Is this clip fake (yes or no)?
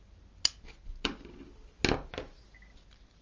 no